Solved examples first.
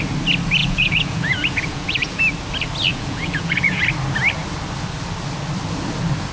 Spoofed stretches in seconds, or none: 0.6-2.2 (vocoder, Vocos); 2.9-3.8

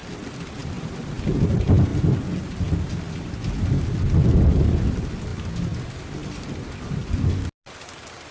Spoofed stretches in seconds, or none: none

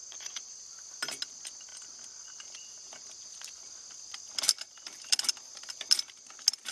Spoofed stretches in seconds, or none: 0.0-0.5 (vocoder, Vocos)

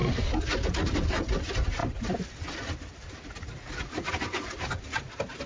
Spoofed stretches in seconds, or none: none